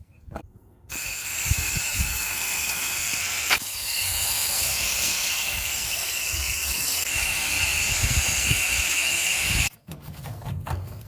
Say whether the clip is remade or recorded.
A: remade